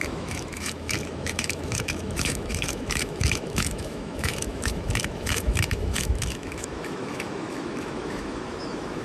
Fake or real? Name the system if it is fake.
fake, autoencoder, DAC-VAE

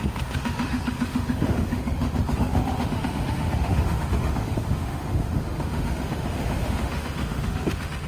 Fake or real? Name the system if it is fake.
fake, autoencoder, DAC-VAE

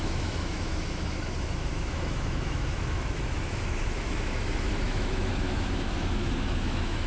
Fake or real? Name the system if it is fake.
fake, autoencoder, DAC-VAE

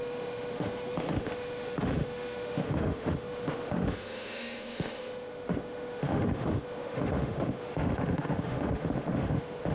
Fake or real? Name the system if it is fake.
fake, autoencoder, DAC-VAE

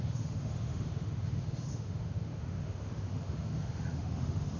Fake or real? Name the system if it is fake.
fake, autoencoder, DAC-VAE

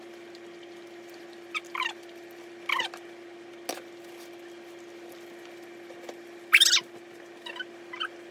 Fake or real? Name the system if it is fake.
real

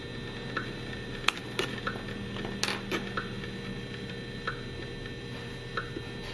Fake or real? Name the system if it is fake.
real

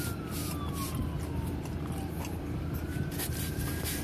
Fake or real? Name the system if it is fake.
real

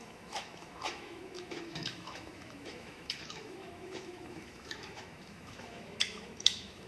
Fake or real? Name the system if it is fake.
fake, autoencoder, DAC-VAE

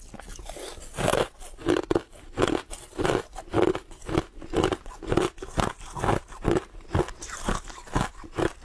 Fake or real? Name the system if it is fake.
real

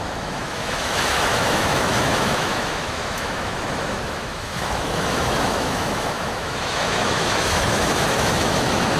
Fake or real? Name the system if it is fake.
fake, autoencoder, DAC-VAE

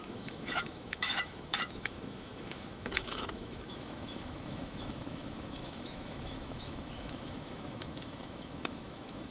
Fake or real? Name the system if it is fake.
fake, autoencoder, DAC-VAE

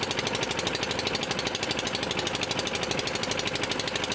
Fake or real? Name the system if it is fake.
real